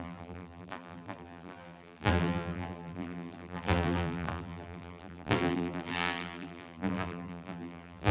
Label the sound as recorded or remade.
remade